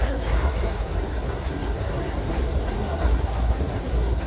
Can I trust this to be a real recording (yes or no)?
no